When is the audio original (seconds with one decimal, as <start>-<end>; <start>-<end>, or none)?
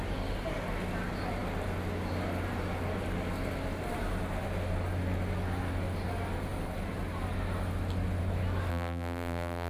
0.0-8.7